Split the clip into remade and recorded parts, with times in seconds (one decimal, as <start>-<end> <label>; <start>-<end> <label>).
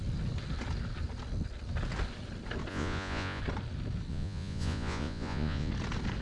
0.0-2.7 recorded; 2.7-3.4 remade; 3.4-4.1 recorded; 4.1-5.7 remade; 5.7-6.2 recorded